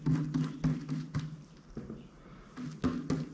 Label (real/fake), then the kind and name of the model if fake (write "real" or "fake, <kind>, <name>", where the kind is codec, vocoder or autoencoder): real